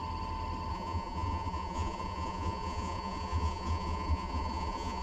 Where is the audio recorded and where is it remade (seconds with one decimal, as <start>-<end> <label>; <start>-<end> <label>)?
0.0-0.7 recorded; 0.7-5.0 remade